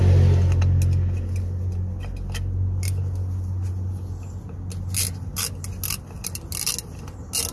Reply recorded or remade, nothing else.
recorded